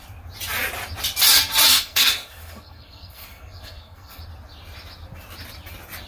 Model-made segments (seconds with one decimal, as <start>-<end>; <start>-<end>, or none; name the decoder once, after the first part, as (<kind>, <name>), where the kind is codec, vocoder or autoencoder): 1.7-4.2 (codec, SNAC)